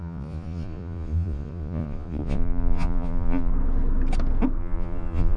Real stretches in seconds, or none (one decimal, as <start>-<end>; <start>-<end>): 3.5-4.6